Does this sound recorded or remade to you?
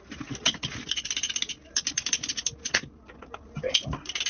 recorded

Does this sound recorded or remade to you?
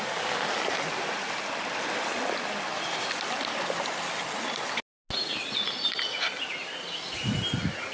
recorded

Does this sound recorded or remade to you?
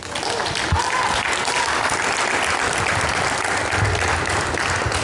recorded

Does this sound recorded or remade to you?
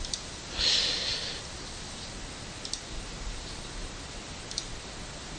recorded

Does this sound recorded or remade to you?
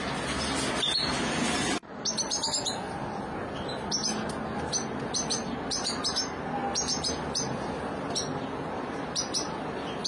recorded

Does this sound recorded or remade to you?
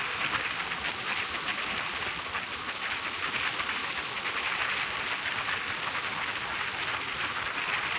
recorded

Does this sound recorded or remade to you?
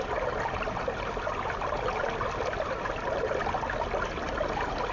recorded